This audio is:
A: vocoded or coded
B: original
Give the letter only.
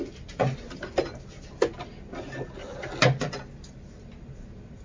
B